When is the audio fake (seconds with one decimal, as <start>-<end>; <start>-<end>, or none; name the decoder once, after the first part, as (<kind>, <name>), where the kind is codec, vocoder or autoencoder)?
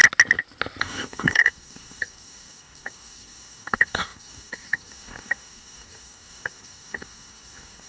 0.8-7.9 (codec, DAC)